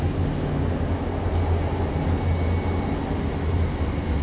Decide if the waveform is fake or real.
real